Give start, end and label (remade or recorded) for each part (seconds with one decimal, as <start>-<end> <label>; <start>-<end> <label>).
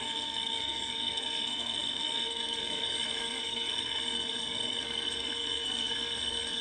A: 0.0-6.6 remade